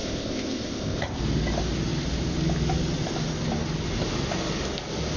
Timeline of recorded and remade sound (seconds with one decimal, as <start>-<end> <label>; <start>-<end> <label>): 0.0-1.2 remade; 1.2-5.2 recorded